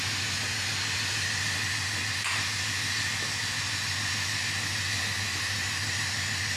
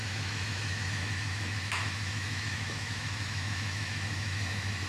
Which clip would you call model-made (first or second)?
second